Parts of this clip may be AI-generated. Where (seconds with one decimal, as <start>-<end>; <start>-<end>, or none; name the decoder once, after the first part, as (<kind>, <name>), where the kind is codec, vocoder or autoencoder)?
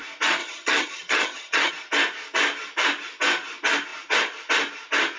0.4-1.7 (vocoder, HiFi-GAN)